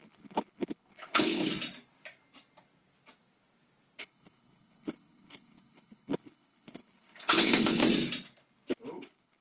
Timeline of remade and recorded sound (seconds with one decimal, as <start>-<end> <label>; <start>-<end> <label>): 0.0-1.4 remade; 1.4-4.0 recorded; 4.0-7.8 remade; 7.8-8.7 recorded; 8.7-9.4 remade